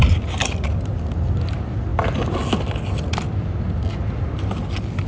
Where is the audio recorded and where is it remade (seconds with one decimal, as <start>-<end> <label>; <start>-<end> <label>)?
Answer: 0.0-5.1 recorded